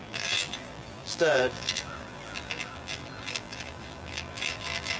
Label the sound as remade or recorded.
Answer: remade